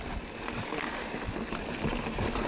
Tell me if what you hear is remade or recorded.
recorded